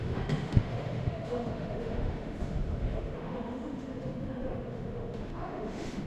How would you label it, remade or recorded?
remade